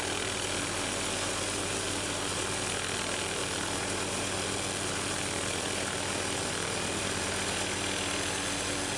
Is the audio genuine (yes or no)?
yes